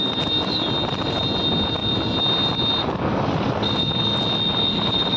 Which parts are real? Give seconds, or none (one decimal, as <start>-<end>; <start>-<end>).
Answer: 0.0-5.2